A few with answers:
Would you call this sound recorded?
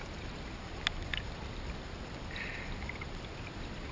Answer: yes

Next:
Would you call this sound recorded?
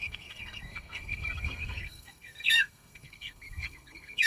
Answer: no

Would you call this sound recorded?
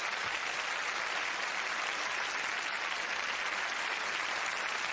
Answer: yes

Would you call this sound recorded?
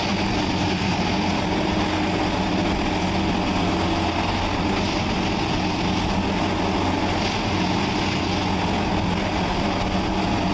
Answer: yes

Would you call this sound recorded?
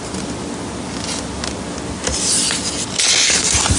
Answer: yes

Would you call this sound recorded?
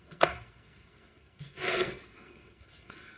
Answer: no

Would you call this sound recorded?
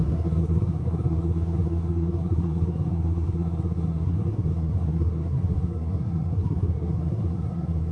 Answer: no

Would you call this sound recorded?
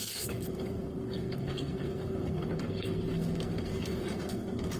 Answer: no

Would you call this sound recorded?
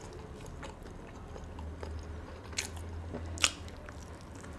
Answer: yes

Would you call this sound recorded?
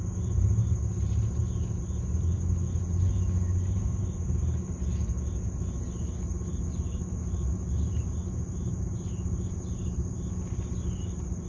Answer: yes